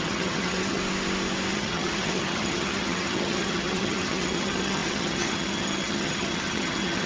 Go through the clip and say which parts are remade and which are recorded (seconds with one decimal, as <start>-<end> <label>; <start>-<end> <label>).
0.0-0.8 remade; 0.8-1.5 recorded; 1.5-7.1 remade